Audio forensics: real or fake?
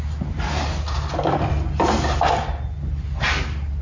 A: real